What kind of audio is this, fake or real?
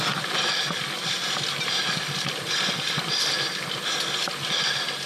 real